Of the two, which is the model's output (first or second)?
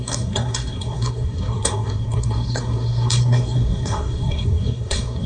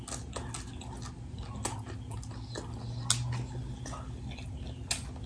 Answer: first